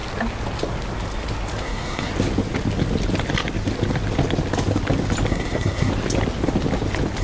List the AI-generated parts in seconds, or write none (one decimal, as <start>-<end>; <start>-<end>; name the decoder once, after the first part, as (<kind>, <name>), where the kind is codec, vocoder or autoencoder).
1.6-2.1 (codec, SNAC); 5.3-5.9